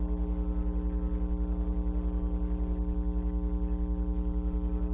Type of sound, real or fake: real